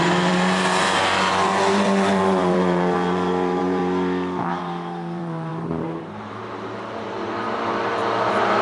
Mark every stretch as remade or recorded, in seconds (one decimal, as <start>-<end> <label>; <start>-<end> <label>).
0.0-3.8 remade; 3.8-4.5 recorded; 4.5-8.6 remade